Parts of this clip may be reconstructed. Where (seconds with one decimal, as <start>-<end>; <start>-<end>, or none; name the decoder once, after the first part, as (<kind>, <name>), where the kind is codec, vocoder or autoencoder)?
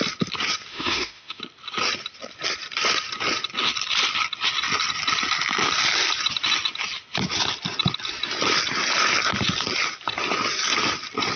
0.7-1.4 (autoencoder, DAC-VAE)